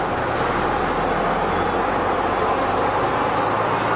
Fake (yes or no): no